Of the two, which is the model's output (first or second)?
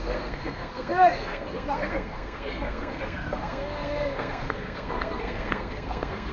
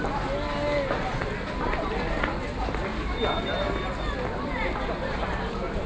first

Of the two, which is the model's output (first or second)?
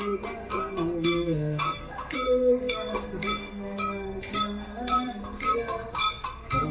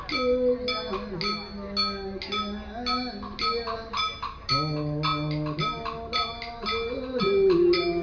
first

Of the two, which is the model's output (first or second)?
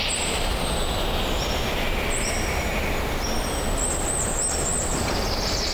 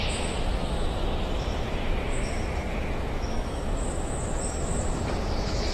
second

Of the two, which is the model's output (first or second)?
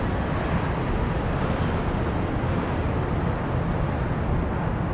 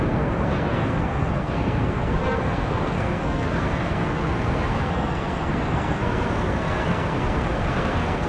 second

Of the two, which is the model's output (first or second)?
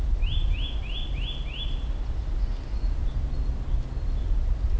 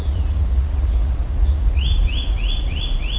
second